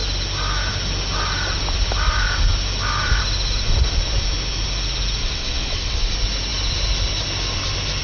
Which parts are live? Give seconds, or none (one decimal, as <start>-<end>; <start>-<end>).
0.0-5.2; 6.1-8.0